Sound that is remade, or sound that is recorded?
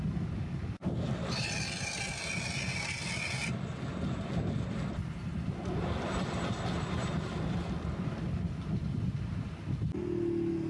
recorded